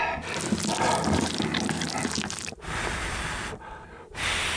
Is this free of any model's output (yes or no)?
yes